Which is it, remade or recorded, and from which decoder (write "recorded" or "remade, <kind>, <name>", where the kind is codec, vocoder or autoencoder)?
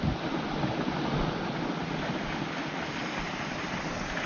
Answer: recorded